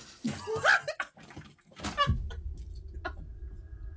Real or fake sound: real